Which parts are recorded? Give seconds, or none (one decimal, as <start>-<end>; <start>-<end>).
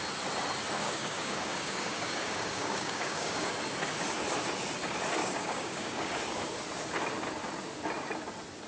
0.0-0.8; 3.5-5.2; 6.2-8.7